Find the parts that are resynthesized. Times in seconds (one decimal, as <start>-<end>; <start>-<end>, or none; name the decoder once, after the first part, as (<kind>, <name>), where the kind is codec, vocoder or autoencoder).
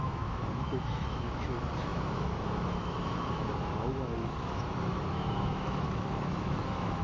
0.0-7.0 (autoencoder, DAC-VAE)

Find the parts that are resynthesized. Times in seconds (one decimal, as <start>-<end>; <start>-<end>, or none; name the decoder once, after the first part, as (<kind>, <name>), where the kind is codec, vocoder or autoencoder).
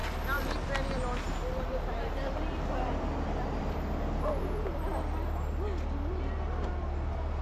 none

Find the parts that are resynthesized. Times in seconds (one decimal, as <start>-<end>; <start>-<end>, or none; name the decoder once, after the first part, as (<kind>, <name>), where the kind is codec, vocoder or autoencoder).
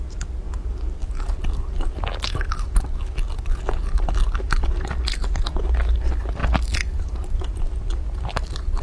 none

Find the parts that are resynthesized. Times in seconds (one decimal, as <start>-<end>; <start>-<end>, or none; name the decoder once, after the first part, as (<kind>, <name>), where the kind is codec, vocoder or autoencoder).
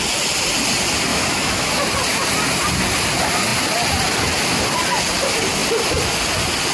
1.1-1.7 (autoencoder, DAC-VAE)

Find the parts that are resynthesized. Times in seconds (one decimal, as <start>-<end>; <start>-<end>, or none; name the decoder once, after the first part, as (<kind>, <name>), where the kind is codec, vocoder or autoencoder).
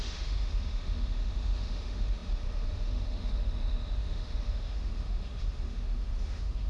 0.0-6.7 (autoencoder, DAC-VAE)